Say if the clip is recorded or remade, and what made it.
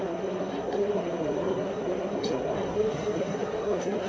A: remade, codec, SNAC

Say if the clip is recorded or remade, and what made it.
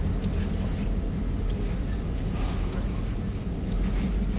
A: recorded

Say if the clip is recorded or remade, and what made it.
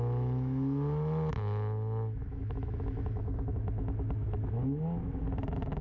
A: remade, autoencoder, DAC-VAE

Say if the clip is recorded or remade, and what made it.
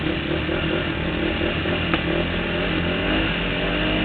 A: recorded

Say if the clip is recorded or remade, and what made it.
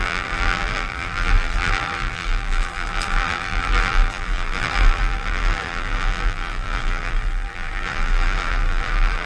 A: remade, vocoder, BigVGAN v2